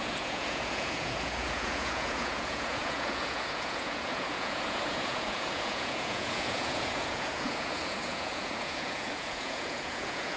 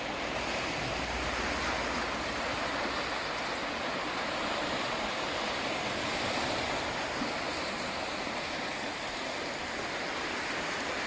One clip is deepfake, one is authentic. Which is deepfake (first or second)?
first